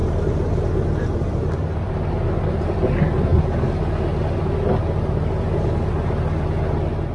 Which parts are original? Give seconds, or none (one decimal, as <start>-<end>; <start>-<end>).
0.0-7.1